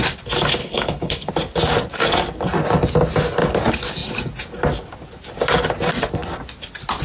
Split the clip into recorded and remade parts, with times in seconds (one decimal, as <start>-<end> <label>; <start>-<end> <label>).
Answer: 0.0-0.6 recorded; 0.6-1.3 remade; 1.3-7.0 recorded